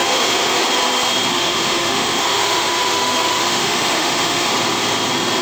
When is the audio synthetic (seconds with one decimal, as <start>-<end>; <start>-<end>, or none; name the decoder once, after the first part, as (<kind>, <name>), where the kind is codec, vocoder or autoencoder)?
0.0-0.6 (autoencoder, DAC-VAE); 1.3-4.5

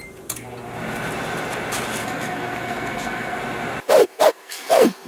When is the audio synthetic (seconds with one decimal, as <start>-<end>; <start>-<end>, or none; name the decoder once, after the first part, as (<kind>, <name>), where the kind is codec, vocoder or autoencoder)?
2.0-3.4 (codec, SNAC); 4.0-5.1